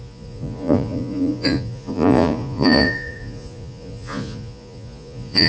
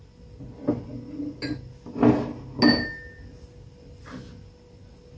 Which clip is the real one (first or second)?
second